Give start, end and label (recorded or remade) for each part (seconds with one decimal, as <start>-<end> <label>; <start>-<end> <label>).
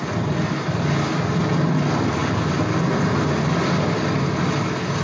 0.0-5.0 recorded